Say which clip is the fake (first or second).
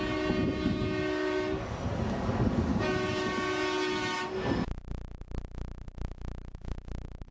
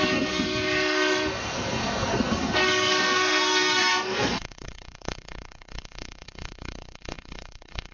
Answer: second